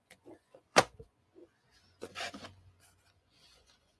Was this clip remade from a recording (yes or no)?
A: yes